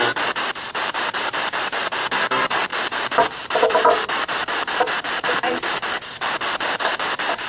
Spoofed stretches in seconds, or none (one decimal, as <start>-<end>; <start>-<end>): 0.0-7.5